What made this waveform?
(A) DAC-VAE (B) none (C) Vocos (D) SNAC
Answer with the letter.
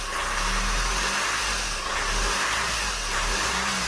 B